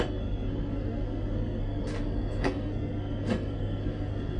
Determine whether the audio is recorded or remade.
remade